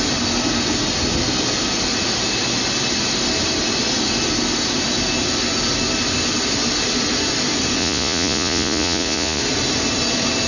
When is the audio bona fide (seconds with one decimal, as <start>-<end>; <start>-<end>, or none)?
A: 0.0-7.8; 9.4-10.5